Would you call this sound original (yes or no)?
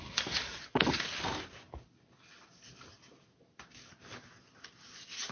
yes